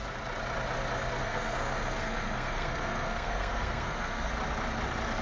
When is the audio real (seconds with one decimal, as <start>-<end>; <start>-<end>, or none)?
0.0-1.2; 4.3-5.2